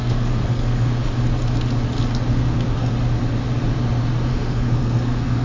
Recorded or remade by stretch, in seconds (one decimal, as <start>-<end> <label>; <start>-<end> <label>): 0.0-1.0 remade; 1.0-2.3 recorded; 2.3-2.9 remade; 2.9-4.3 recorded; 4.3-5.4 remade